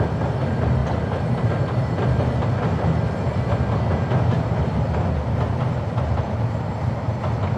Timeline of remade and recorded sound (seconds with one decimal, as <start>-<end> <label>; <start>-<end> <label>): 0.0-7.6 recorded